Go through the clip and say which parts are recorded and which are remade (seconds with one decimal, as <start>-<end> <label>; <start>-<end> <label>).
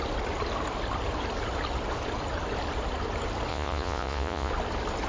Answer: 0.0-3.5 recorded; 3.5-4.5 remade; 4.5-5.1 recorded